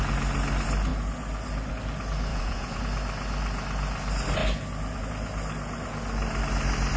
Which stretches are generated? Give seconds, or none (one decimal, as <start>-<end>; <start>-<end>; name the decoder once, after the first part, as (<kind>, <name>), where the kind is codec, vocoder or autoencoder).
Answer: 2.3-2.8 (vocoder, Vocos)